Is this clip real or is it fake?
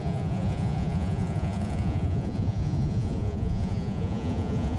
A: fake